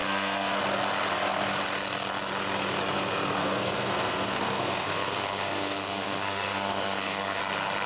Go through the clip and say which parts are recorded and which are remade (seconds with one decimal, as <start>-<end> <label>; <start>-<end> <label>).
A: 0.0-0.6 remade; 0.6-3.4 recorded; 3.4-7.4 remade; 7.4-7.9 recorded